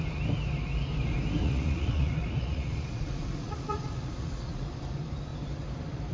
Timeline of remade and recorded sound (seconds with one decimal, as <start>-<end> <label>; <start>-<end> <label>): 0.0-1.4 recorded; 1.4-4.7 remade; 4.7-6.1 recorded